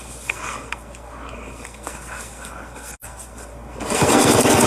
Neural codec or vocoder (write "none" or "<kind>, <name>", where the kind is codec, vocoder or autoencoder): codec, SNAC